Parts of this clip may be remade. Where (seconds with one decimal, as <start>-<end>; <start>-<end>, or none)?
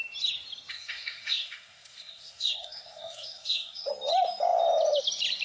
0.7-3.9